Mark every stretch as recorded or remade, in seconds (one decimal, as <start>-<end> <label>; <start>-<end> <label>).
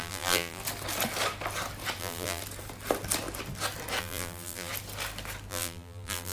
0.0-0.6 remade; 0.6-2.0 recorded; 2.0-2.4 remade; 2.4-4.0 recorded; 4.0-4.7 remade; 4.7-5.5 recorded; 5.5-6.3 remade